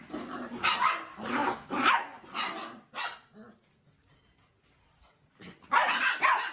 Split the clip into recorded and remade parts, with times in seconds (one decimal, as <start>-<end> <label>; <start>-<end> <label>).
0.0-6.5 recorded

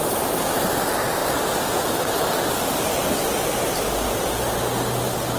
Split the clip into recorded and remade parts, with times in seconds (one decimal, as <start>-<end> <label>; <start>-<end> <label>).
0.0-5.4 recorded

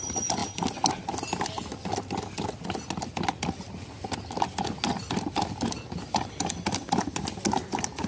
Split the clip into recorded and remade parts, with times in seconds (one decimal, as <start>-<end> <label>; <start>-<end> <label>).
0.0-8.1 recorded

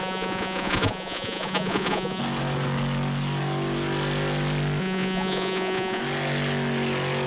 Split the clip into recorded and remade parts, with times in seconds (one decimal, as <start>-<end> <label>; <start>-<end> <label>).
0.0-2.2 remade; 2.2-4.8 recorded; 4.8-6.0 remade; 6.0-7.3 recorded

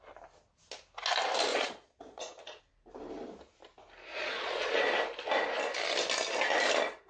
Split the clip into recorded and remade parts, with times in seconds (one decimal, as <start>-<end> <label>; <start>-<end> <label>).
0.0-1.5 recorded; 1.5-2.6 remade; 2.6-4.1 recorded; 4.1-4.8 remade; 4.8-7.1 recorded

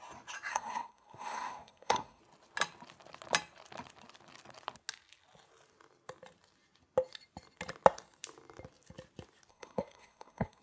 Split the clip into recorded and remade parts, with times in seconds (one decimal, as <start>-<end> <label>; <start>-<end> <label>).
0.0-0.5 recorded; 0.5-2.2 remade; 2.2-9.5 recorded; 9.5-10.6 remade

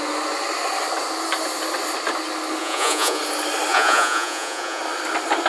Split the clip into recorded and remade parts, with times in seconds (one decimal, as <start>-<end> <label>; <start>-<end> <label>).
0.0-2.6 recorded; 2.6-3.2 remade; 3.2-3.7 recorded; 3.7-4.8 remade; 4.8-5.5 recorded